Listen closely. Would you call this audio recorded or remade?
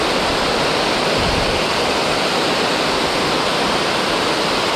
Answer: recorded